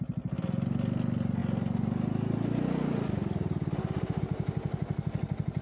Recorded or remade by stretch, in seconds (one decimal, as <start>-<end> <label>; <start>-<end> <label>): 0.0-5.6 recorded